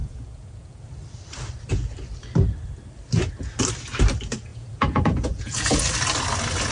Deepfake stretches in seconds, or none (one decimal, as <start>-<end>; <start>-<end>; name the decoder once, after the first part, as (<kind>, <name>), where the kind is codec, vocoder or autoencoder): 0.0-0.8 (vocoder, Vocos); 4.5-5.8